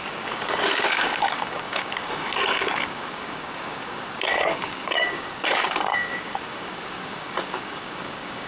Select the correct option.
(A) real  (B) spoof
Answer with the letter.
B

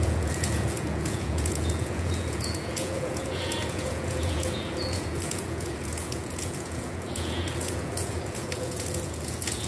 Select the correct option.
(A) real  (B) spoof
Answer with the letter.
B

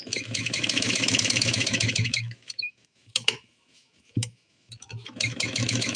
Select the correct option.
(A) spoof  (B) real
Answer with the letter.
A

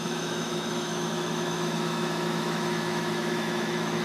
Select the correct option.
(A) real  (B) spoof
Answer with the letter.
B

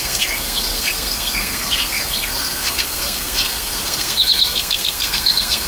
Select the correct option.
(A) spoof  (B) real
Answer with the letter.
A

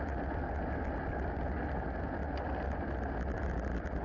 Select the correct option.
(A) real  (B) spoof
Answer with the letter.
A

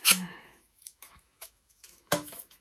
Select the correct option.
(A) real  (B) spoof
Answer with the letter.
B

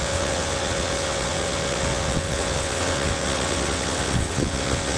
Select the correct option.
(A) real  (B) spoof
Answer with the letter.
B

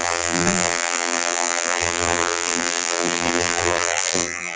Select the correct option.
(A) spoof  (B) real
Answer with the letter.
A